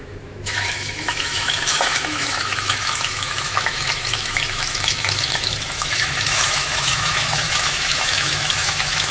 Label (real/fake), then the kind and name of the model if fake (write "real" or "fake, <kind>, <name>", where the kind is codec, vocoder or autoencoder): fake, autoencoder, DAC-VAE